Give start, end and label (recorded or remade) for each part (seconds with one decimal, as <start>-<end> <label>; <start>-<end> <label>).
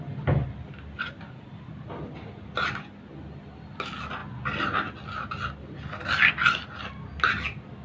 0.0-7.8 recorded